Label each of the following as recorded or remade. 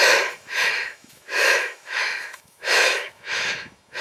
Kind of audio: remade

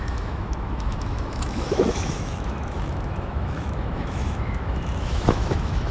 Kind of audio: remade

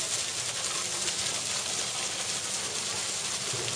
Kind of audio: recorded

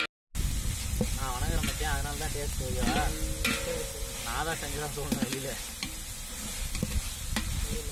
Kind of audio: recorded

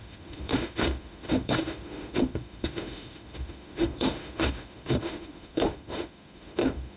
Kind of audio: remade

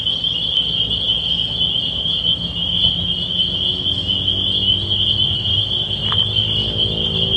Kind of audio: recorded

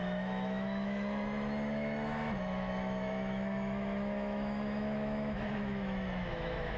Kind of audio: remade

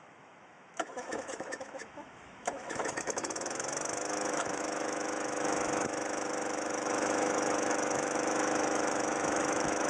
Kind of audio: remade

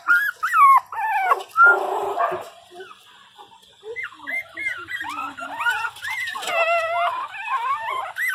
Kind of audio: recorded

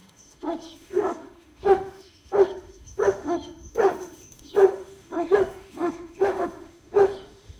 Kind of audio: remade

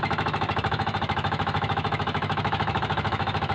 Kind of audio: remade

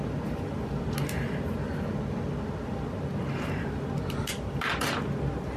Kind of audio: recorded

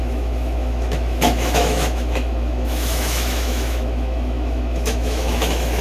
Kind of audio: remade